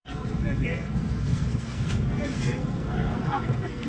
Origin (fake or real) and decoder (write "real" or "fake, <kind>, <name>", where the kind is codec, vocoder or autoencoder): fake, codec, SNAC